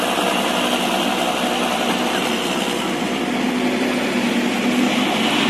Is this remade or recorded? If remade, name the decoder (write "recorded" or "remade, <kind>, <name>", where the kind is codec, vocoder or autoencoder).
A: recorded